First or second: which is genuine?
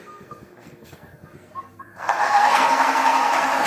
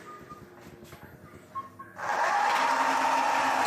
second